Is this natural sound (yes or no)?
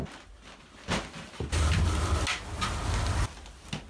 yes